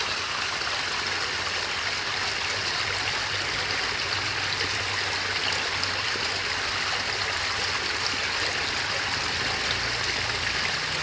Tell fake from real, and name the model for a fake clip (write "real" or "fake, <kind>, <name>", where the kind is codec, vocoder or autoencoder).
real